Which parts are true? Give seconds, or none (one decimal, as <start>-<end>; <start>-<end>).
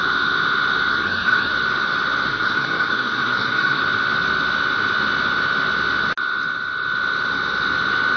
0.0-0.9; 1.5-2.3; 3.8-8.2